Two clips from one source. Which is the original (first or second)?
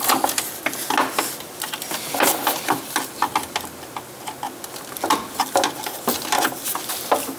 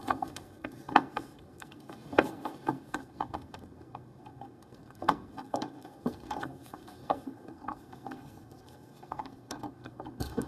first